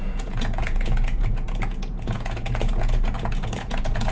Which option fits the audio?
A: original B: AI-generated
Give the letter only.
B